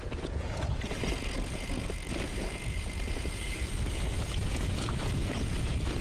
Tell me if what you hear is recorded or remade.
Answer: remade